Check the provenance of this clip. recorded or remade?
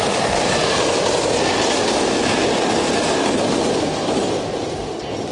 recorded